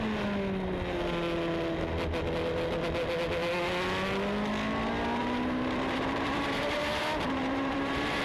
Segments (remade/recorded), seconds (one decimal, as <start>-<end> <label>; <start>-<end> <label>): 0.0-5.2 recorded; 5.2-7.0 remade; 7.0-7.4 recorded; 7.4-8.2 remade